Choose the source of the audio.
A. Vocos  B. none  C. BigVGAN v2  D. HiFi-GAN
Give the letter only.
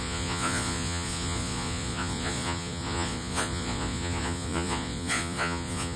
A